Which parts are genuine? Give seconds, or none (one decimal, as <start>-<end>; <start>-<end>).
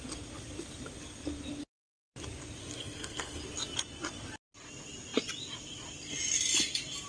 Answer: 0.0-2.6; 3.4-7.1